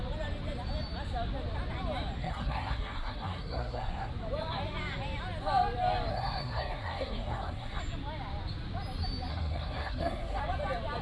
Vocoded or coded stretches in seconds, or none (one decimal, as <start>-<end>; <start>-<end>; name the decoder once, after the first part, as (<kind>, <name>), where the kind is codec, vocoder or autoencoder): 2.2-4.1 (codec, SNAC); 6.1-7.8; 9.3-10.4